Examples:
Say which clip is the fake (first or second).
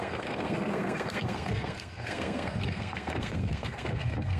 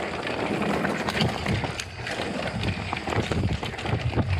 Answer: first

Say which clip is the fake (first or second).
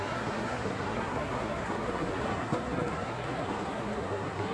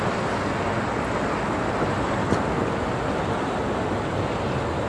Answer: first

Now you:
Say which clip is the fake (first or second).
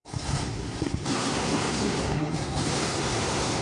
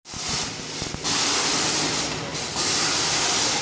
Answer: first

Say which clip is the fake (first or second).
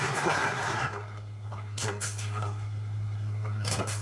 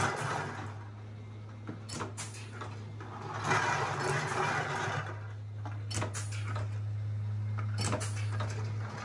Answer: first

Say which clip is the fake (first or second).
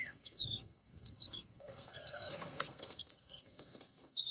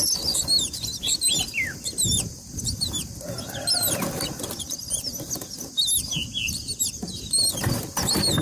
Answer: first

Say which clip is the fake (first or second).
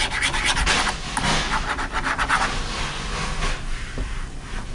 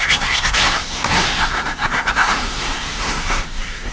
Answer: second